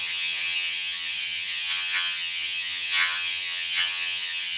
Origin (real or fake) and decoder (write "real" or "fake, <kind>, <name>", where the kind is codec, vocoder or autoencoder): fake, vocoder, HiFi-GAN